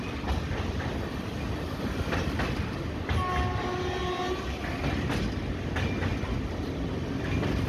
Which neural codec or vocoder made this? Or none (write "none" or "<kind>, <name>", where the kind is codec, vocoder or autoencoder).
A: none